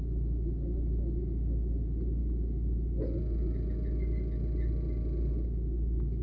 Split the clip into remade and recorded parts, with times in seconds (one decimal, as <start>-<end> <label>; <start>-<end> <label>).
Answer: 0.0-6.2 recorded